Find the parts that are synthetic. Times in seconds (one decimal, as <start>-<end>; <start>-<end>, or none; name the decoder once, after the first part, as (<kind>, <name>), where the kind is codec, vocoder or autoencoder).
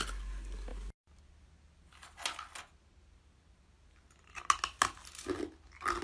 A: none